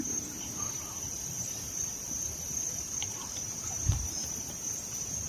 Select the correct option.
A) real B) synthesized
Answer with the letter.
B